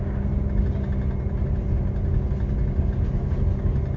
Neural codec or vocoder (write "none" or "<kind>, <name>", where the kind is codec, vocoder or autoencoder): none